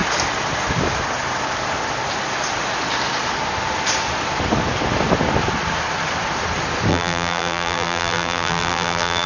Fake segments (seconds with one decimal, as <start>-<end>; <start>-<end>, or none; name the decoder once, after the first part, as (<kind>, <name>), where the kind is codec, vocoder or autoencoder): 6.9-9.3 (vocoder, BigVGAN v2)